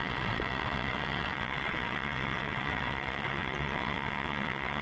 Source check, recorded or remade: remade